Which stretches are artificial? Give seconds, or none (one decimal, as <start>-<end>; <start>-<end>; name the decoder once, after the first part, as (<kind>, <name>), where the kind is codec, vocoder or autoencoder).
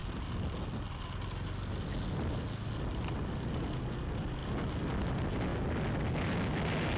none